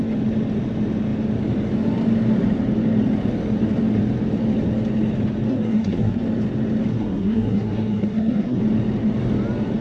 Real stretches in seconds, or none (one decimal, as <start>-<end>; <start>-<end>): 0.0-5.5; 6.2-6.9; 8.6-9.8